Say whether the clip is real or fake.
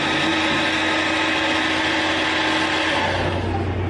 real